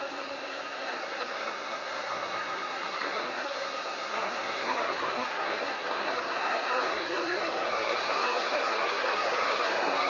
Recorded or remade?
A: remade